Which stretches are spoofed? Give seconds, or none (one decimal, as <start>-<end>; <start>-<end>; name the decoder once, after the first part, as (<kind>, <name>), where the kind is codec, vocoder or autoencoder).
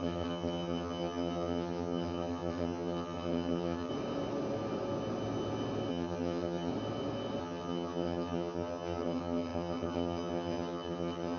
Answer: 0.0-3.9 (vocoder, HiFi-GAN); 5.9-6.7; 7.4-11.4